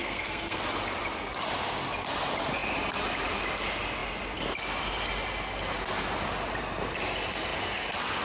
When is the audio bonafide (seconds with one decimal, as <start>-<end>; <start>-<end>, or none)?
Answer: 0.6-8.2